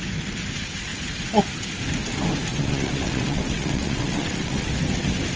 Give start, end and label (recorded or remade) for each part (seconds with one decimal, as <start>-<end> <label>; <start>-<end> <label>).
0.0-2.5 recorded; 2.5-4.7 remade; 4.7-5.4 recorded

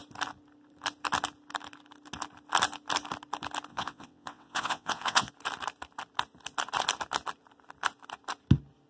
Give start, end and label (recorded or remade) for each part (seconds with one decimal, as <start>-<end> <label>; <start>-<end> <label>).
0.0-3.7 recorded; 3.7-5.3 remade; 5.3-8.9 recorded

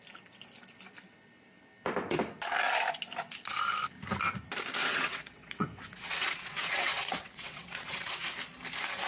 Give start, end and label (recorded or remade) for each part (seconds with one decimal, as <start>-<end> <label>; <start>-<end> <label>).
0.0-4.8 recorded; 4.8-8.3 remade; 8.3-9.1 recorded

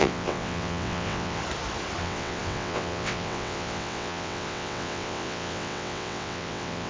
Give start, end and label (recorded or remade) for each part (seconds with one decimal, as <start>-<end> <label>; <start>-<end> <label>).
0.0-1.4 remade; 1.4-2.0 recorded; 2.0-6.9 remade

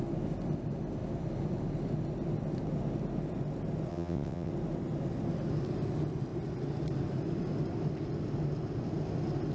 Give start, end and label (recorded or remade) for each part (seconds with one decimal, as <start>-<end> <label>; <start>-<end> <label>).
0.0-3.9 recorded; 3.9-4.5 remade; 4.5-9.5 recorded

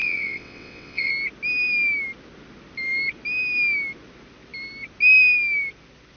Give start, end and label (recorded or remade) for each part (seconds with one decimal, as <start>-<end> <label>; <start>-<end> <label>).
0.0-1.1 remade; 1.1-6.2 recorded

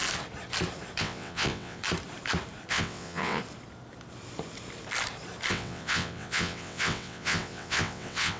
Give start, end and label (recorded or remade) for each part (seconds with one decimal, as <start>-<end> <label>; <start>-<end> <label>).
0.0-1.0 recorded; 1.0-1.8 remade; 1.8-2.7 recorded; 2.7-3.4 remade; 3.4-5.5 recorded; 5.5-8.4 remade

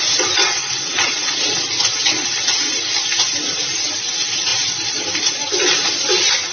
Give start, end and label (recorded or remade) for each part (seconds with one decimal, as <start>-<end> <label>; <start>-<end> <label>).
0.0-0.4 recorded; 0.4-1.4 remade; 1.4-1.9 recorded; 1.9-2.4 remade; 2.4-6.5 recorded